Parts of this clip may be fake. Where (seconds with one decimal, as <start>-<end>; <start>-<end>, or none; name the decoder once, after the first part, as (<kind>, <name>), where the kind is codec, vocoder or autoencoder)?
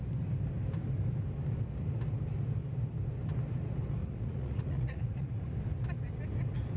4.0-5.4 (vocoder, Vocos)